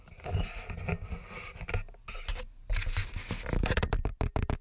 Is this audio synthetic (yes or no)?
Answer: no